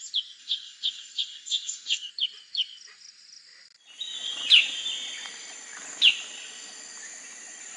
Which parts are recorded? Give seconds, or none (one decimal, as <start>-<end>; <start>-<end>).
0.0-0.4; 2.1-7.8